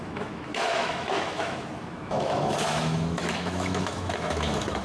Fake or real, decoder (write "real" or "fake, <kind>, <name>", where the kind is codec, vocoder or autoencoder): fake, autoencoder, DAC-VAE